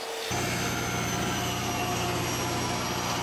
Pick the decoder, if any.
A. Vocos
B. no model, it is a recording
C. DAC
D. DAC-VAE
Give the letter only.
B